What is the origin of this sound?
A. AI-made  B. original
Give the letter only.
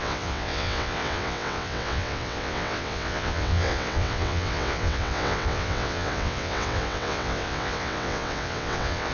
A